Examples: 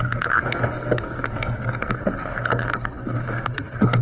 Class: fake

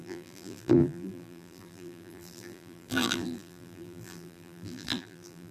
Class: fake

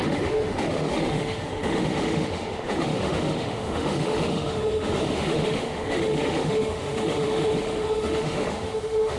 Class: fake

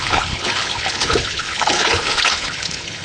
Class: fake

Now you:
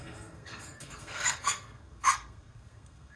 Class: fake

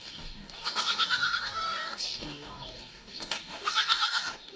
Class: fake